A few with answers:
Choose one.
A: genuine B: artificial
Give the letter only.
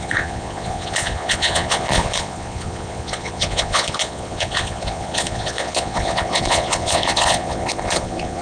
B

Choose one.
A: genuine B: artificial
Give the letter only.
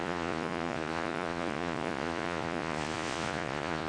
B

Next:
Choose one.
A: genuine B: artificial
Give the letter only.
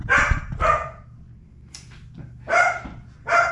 A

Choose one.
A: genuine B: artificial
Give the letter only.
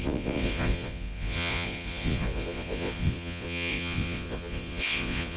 B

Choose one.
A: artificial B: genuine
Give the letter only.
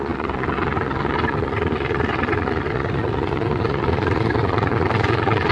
A